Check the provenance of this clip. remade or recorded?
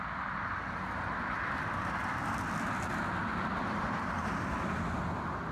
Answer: recorded